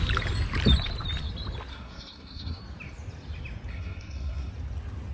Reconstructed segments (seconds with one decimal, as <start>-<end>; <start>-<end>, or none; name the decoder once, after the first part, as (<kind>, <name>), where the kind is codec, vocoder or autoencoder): 1.7-2.6 (codec, SNAC); 3.7-4.5

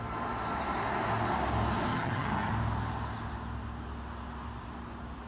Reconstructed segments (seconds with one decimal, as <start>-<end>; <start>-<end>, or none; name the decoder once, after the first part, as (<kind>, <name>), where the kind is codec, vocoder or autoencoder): 1.9-2.5 (vocoder, HiFi-GAN)

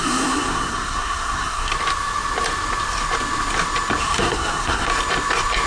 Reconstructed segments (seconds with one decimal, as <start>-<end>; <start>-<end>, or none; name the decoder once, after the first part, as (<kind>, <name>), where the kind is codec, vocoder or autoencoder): 0.0-1.7 (codec, SNAC); 4.0-4.9

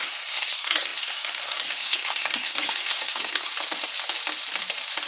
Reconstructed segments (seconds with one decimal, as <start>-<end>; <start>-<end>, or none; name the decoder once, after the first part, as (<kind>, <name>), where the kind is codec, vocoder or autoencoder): 0.0-3.5 (codec, SNAC)